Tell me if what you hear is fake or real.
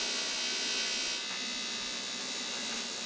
real